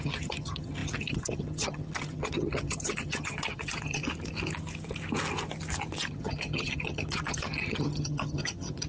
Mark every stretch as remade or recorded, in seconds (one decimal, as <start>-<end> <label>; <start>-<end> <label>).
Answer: 0.0-4.0 remade; 4.0-6.1 recorded; 6.1-8.9 remade